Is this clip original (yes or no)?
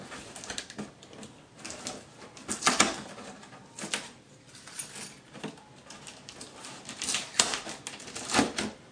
yes